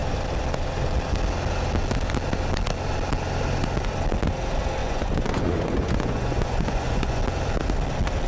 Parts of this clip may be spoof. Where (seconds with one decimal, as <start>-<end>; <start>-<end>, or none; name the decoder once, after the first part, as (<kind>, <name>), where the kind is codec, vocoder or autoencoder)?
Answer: 4.8-7.2 (vocoder, Vocos)